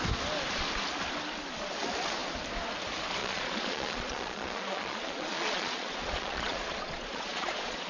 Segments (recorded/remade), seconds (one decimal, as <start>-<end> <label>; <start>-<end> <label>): 0.0-3.2 recorded; 3.2-7.9 remade